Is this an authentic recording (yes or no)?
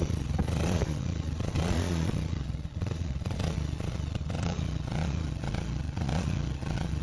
no